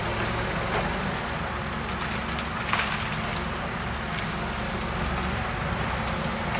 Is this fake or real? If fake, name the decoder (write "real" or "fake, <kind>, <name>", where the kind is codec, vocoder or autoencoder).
real